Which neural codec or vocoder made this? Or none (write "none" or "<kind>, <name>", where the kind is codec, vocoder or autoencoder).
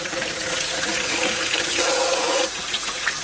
vocoder, Vocos